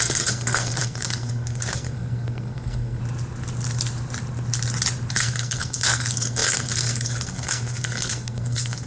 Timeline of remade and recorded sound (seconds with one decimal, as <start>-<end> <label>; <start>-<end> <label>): 0.0-3.0 remade; 3.0-5.1 recorded; 5.1-8.9 remade